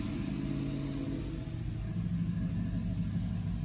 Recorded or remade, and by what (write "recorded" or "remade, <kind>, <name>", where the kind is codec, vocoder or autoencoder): recorded